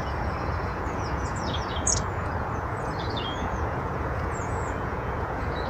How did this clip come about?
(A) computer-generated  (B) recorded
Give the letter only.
A